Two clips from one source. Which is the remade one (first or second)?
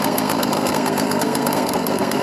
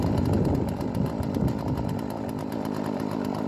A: first